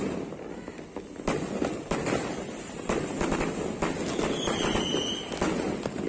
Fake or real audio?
real